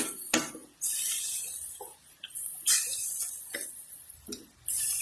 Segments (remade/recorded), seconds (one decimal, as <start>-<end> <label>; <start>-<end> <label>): 0.0-3.0 recorded; 3.0-4.3 remade; 4.3-5.0 recorded